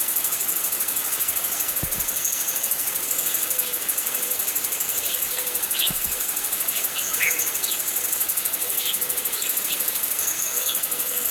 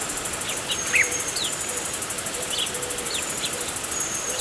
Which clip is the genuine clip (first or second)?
second